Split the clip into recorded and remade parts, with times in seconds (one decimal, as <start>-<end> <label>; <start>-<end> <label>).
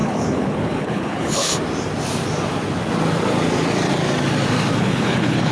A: 0.0-1.5 remade; 1.5-4.8 recorded; 4.8-5.5 remade